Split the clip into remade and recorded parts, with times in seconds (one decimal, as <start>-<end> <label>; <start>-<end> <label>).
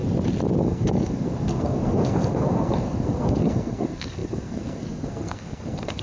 0.0-0.6 recorded; 0.6-6.0 remade